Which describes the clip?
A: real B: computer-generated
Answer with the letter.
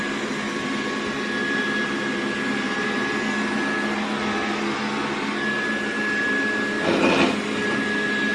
A